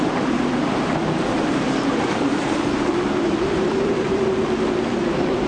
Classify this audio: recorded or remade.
remade